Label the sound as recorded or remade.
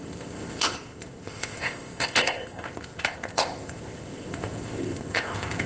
remade